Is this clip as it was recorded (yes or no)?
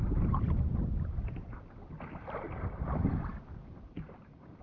no